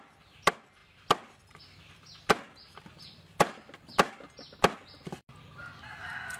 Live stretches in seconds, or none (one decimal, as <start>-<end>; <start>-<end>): 0.0-6.4